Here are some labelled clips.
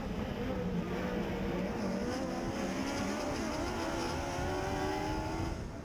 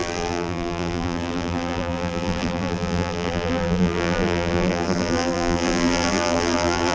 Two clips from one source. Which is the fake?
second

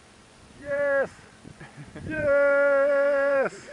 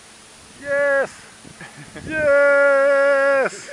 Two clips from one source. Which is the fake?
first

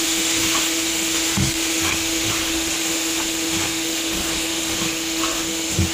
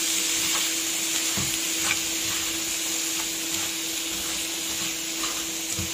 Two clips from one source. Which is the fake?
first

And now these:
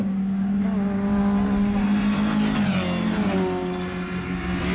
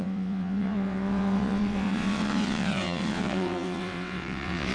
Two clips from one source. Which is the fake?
second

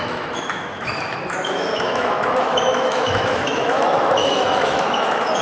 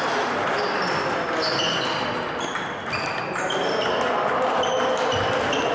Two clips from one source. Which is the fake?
first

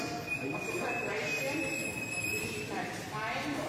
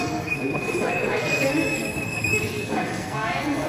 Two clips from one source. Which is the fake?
second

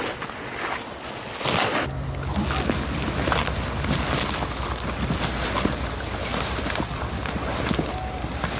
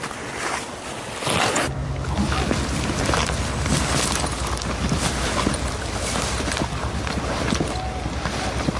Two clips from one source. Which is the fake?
second